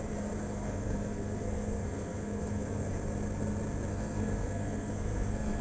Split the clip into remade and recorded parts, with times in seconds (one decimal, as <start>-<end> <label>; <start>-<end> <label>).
0.0-0.4 recorded; 0.4-2.9 remade; 2.9-3.9 recorded; 3.9-5.6 remade